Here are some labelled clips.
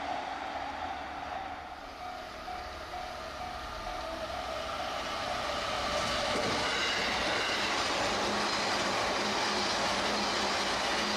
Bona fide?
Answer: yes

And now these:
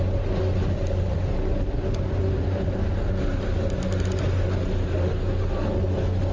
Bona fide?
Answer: yes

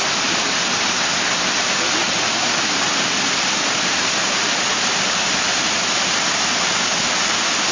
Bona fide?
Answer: yes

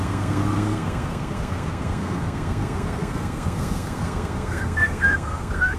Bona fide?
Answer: no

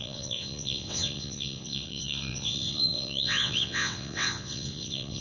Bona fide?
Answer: no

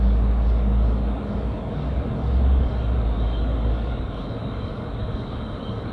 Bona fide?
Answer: no